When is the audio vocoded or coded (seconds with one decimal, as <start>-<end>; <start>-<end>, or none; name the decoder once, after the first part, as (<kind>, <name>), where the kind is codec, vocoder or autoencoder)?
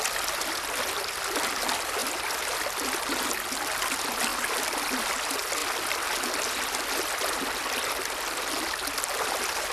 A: none